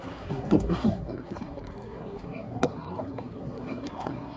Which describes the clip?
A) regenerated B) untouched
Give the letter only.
A